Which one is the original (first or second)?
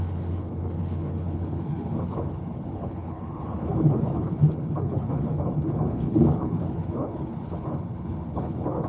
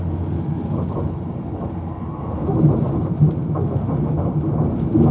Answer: second